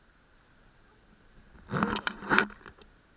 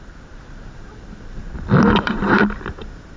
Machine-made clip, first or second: second